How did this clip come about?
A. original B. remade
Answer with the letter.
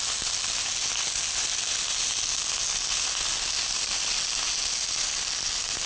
A